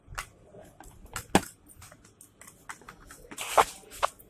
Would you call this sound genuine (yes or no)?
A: yes